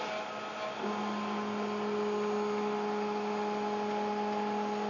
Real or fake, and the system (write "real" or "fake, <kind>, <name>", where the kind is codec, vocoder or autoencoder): real